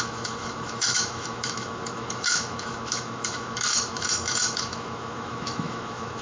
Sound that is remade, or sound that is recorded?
remade